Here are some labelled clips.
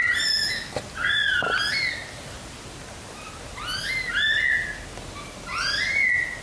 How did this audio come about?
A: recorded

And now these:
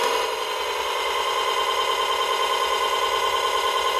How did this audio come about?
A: recorded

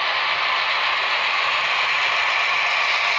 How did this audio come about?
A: recorded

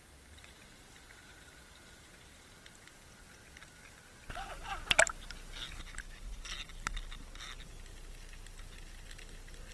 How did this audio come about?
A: recorded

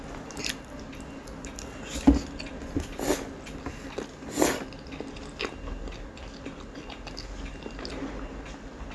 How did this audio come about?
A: recorded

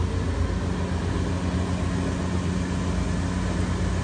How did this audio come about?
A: recorded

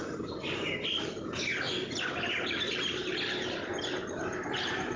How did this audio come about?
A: recorded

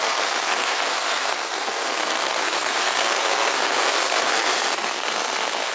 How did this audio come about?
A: remade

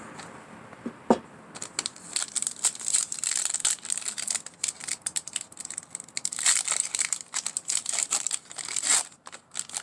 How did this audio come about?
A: recorded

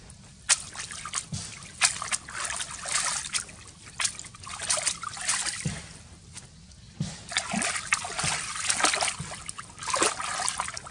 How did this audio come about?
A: recorded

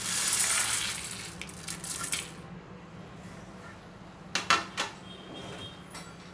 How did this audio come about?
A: recorded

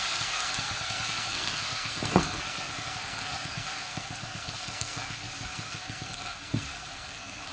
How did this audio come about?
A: remade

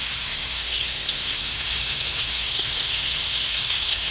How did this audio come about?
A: remade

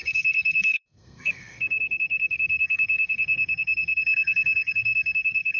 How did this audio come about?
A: remade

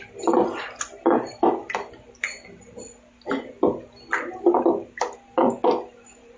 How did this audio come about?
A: recorded